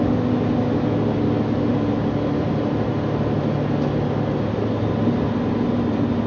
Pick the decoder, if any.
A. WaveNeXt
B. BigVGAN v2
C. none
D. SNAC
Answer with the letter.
C